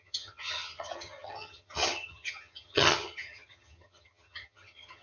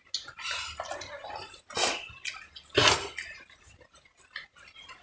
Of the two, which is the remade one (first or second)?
first